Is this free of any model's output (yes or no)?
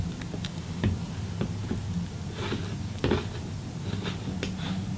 yes